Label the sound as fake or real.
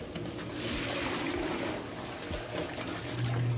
real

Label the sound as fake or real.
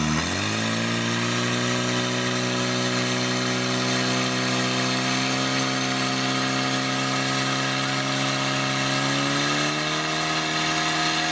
real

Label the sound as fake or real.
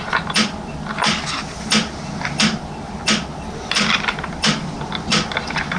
real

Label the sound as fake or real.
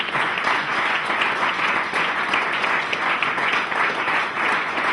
fake